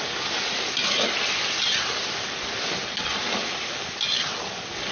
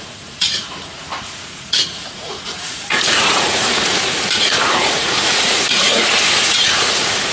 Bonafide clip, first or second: first